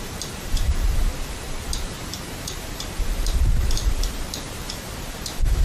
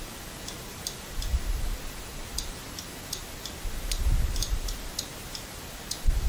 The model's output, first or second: first